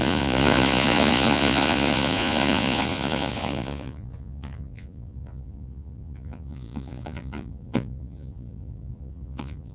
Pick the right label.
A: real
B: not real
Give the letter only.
B